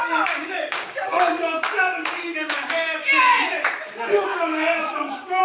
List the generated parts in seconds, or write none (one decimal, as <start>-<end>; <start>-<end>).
0.0-3.2; 4.3-5.4